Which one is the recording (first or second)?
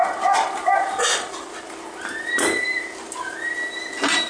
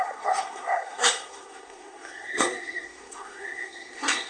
first